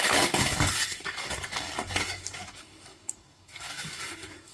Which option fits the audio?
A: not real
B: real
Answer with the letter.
A